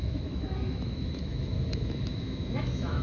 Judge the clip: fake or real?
fake